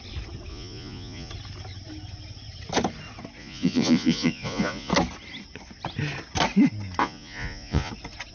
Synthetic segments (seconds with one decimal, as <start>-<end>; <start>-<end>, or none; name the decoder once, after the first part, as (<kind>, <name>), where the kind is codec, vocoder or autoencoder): 0.5-1.3 (vocoder, Vocos); 3.4-4.9; 7.0-7.9